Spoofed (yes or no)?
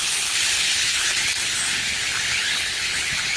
yes